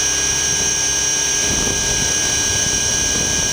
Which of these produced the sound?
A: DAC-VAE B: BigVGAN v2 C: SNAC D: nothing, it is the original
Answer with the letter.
B